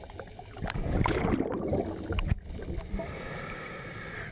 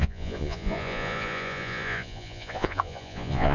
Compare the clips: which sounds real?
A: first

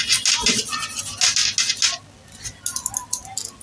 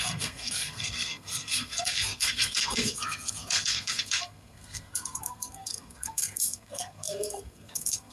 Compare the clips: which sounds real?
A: first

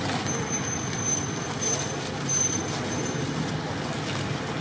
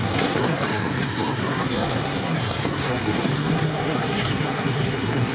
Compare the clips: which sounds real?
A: first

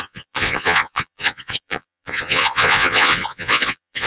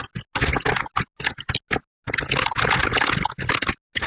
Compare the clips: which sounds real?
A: second